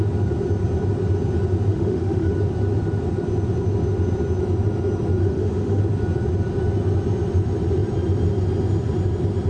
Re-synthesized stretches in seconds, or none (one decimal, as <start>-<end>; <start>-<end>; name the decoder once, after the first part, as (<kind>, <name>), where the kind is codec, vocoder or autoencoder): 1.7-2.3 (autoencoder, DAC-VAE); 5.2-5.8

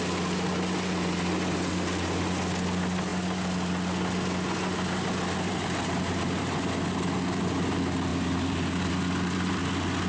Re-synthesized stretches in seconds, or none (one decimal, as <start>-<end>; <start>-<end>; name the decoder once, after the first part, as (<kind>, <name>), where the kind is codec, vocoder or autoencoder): 8.1-9.6 (vocoder, BigVGAN v2)

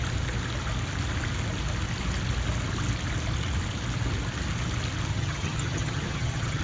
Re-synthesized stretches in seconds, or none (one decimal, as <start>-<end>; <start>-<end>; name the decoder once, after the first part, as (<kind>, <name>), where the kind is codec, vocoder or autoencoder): 5.1-6.6 (vocoder, HiFi-GAN)

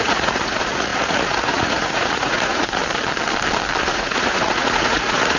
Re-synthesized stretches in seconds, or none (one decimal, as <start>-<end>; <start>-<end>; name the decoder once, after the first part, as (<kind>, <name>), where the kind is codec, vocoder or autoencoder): 0.0-2.8 (vocoder, Vocos); 3.8-5.4

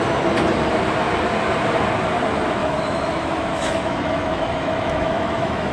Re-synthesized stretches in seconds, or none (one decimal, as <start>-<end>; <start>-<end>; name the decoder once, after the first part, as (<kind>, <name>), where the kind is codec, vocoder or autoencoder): 2.6-5.7 (autoencoder, DAC-VAE)